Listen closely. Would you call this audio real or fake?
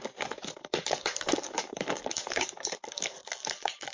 fake